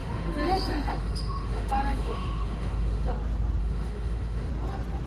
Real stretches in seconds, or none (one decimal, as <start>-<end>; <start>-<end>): 3.1-3.6; 4.5-5.1